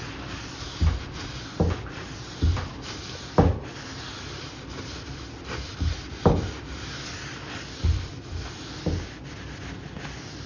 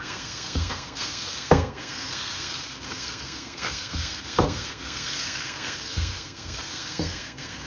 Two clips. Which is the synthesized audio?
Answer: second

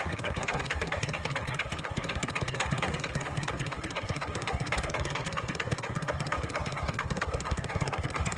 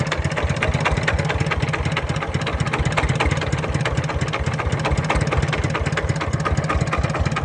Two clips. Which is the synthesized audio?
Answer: first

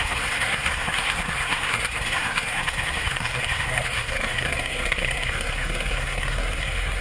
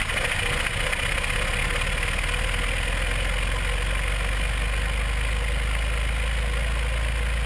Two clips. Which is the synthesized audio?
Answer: first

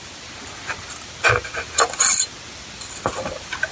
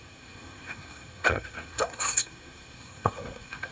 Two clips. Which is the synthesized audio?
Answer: second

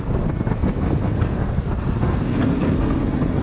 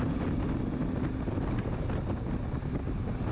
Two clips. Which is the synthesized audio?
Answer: first